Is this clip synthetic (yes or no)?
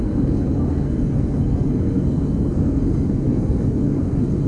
yes